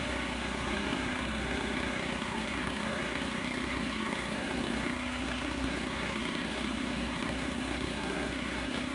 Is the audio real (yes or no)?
no